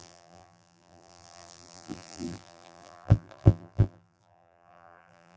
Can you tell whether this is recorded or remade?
remade